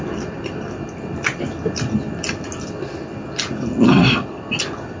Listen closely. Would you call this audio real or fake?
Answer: real